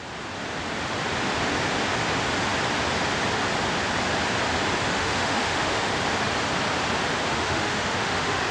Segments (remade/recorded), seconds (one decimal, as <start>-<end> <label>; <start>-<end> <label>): 0.0-4.9 recorded; 4.9-5.9 remade; 5.9-7.3 recorded; 7.3-8.5 remade

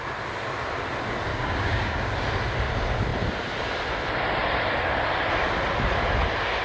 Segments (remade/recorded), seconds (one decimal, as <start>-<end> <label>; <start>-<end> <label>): 0.0-1.3 recorded; 1.3-2.0 remade; 2.0-6.6 recorded